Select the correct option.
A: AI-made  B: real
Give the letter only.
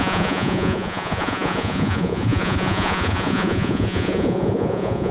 A